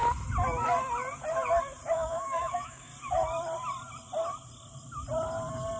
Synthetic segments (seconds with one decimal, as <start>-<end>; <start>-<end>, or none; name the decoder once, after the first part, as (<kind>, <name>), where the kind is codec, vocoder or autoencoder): 1.9-2.9 (autoencoder, DAC-VAE)